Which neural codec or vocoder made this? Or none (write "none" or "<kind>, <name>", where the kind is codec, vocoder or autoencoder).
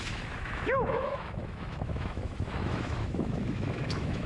autoencoder, DAC-VAE